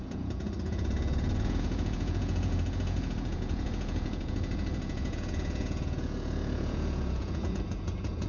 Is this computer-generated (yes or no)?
yes